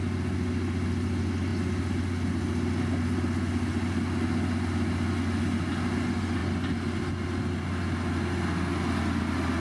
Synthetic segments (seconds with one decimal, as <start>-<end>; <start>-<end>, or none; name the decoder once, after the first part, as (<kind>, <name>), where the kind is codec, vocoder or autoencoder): none